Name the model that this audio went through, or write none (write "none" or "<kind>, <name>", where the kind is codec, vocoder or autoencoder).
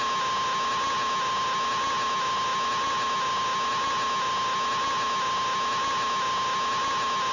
none